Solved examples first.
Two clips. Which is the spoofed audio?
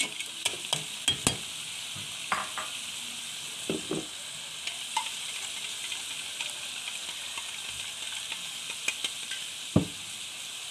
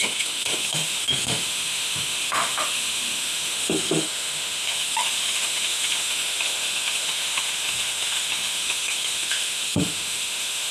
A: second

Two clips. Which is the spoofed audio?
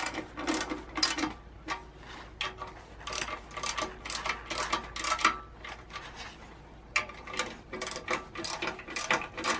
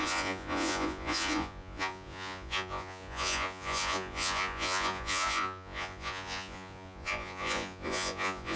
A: second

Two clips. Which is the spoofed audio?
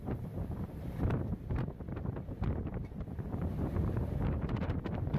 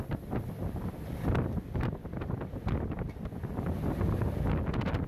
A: first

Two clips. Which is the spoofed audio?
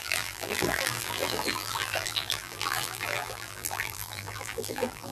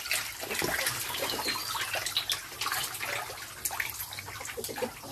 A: first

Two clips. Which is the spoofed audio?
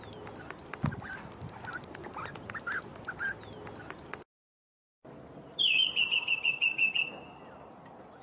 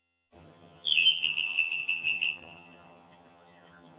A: second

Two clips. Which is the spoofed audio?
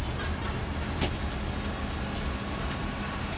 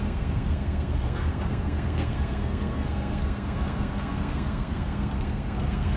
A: second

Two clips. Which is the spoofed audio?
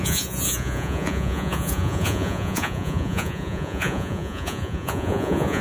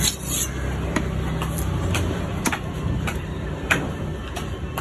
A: first